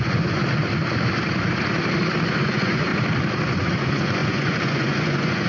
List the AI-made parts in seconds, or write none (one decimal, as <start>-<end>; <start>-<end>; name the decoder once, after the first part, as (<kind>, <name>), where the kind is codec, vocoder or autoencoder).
0.0-0.4 (vocoder, Vocos); 2.4-2.9; 3.5-5.5